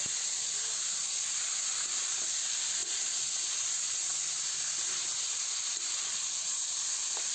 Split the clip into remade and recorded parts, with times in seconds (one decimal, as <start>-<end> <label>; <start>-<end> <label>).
0.0-7.3 recorded